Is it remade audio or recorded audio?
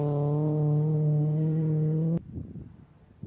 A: recorded